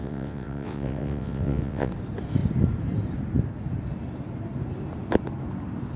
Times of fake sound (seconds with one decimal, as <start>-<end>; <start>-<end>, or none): 0.0-1.9

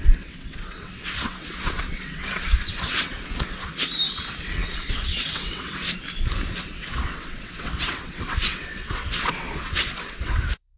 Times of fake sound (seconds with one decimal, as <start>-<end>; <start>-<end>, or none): 0.0-3.7; 4.4-5.8; 6.6-10.8

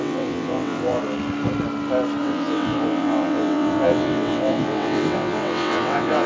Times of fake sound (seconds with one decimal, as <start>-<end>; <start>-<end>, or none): 0.0-1.0; 2.2-6.3

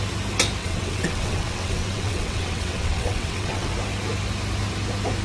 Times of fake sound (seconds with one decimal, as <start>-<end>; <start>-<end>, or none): 0.6-3.7

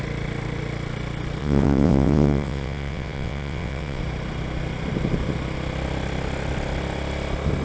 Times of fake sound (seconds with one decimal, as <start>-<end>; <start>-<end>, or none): 1.4-4.0

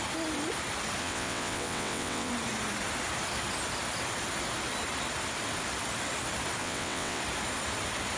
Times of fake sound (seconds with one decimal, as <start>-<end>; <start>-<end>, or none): 1.0-2.3; 6.6-7.2